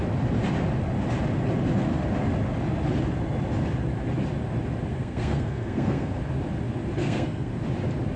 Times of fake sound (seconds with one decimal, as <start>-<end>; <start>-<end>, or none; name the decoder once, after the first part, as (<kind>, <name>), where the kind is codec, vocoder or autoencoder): 4.9-6.2 (codec, SNAC); 7.0-7.5